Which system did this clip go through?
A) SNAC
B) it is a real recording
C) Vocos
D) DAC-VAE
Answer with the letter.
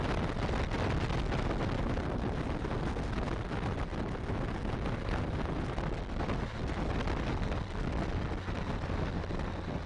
B